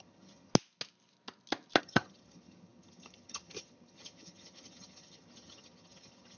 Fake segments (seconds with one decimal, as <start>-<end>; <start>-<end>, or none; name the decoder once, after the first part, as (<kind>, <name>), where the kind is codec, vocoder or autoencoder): 0.0-0.5 (vocoder, HiFi-GAN); 1.8-6.4